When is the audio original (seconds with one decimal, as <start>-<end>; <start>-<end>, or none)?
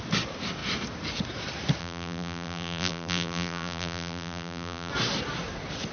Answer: 0.0-1.8; 4.9-5.9